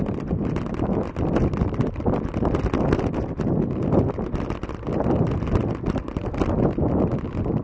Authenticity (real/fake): real